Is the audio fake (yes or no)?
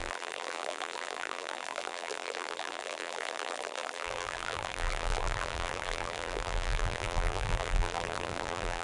yes